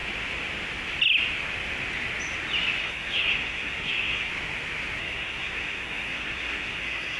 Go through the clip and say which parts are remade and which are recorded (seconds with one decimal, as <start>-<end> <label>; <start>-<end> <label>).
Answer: 0.0-2.8 recorded; 2.8-4.3 remade; 4.3-5.0 recorded; 5.0-7.2 remade